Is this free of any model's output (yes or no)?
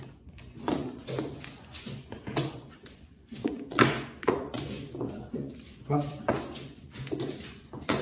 no